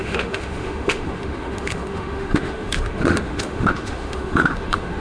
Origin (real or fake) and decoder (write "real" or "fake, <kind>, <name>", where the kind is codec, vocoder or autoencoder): fake, autoencoder, DAC-VAE